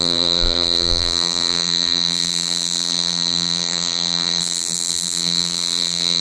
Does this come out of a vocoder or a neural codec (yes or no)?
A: yes